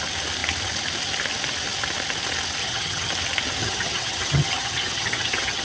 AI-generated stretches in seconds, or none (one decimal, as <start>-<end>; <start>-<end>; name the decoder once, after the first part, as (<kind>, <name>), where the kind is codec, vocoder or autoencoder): 2.6-3.1 (vocoder, HiFi-GAN); 3.6-5.6